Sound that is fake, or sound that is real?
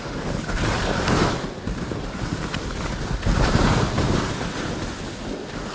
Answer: real